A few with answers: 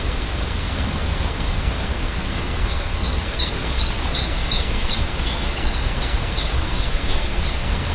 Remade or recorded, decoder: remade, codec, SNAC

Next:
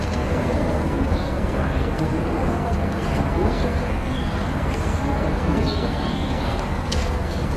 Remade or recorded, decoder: remade, codec, SNAC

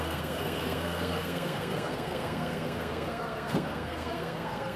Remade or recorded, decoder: remade, codec, SNAC